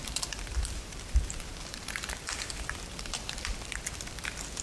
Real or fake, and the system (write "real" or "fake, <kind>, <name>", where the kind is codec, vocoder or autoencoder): fake, vocoder, BigVGAN v2